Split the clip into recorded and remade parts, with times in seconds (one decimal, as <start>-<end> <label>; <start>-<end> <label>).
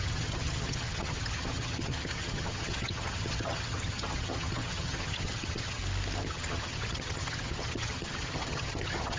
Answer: 0.0-5.8 remade; 5.8-6.3 recorded; 6.3-9.2 remade